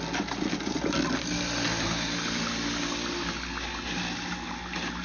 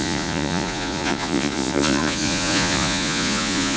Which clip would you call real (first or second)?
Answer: first